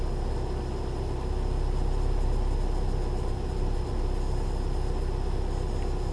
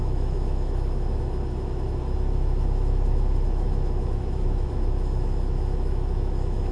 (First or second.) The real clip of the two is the first